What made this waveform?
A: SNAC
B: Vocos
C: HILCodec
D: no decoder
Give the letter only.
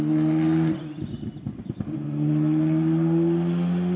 D